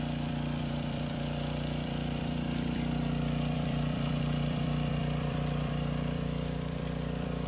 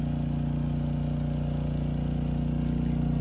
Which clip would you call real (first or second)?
second